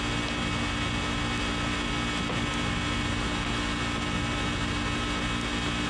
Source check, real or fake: real